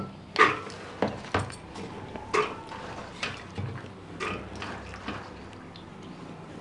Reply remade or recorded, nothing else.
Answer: recorded